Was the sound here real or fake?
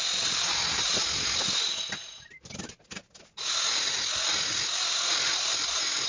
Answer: real